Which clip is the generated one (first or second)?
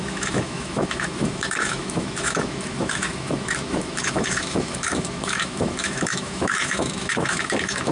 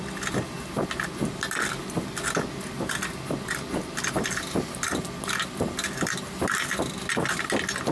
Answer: first